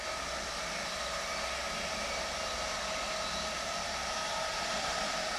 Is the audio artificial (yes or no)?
no